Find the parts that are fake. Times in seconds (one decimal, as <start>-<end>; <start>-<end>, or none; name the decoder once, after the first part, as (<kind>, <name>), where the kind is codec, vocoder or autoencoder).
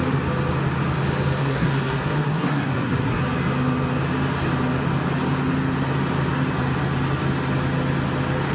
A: 1.4-3.2 (codec, SNAC)